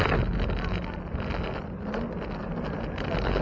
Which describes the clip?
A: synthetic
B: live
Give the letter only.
B